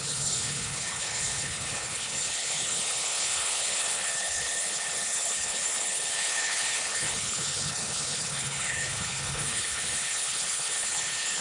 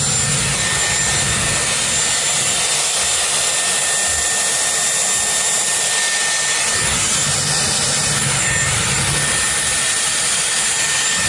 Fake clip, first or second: first